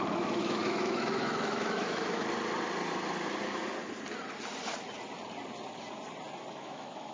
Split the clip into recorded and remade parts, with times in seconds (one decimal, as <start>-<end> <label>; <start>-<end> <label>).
0.0-2.2 remade; 2.2-6.5 recorded; 6.5-7.1 remade

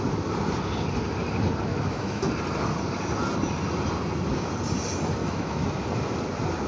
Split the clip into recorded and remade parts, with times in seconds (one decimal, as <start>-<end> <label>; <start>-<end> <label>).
0.0-1.7 recorded; 1.7-2.3 remade; 2.3-5.2 recorded; 5.2-5.8 remade; 5.8-6.7 recorded

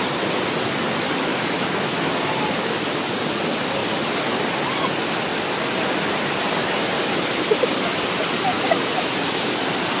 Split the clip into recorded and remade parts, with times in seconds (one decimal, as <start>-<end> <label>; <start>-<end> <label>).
0.0-1.3 recorded; 1.3-2.0 remade; 2.0-10.0 recorded

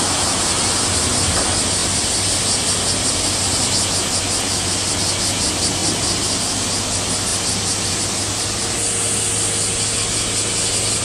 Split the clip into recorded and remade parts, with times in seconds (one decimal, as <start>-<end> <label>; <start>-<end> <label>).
0.0-11.0 recorded

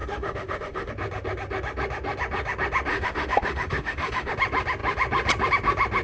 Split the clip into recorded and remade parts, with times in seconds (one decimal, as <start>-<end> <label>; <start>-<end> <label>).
0.0-0.9 remade; 0.9-2.9 recorded; 2.9-4.3 remade; 4.3-6.0 recorded

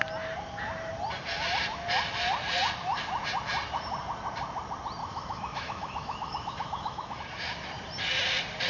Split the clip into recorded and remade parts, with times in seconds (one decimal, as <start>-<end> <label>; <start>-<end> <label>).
0.0-5.0 recorded; 5.0-7.2 remade; 7.2-8.7 recorded